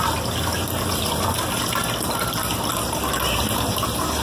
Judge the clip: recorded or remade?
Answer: recorded